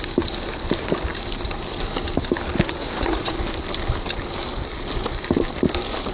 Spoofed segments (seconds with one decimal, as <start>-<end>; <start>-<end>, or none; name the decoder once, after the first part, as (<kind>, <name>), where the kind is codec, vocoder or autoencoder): 2.8-3.3 (vocoder, Vocos)